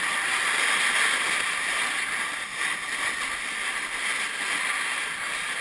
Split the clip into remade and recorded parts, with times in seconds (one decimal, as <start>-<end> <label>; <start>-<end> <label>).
0.0-5.6 recorded